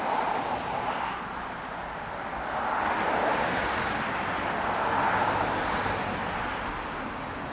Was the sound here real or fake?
real